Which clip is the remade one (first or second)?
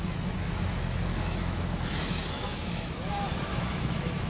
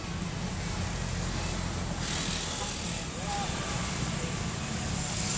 first